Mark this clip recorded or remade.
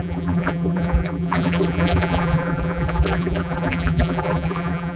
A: remade